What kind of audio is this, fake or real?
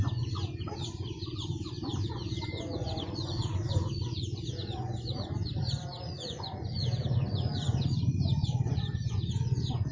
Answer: fake